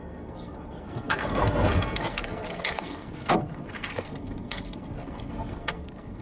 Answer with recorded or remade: remade